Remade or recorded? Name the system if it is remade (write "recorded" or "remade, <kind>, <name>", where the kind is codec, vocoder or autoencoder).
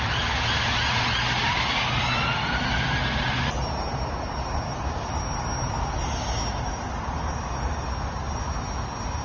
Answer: recorded